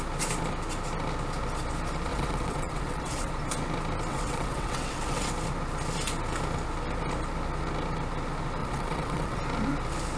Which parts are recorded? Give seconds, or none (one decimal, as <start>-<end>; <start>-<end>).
0.0-2.1; 3.3-4.1; 5.3-8.6; 9.4-10.2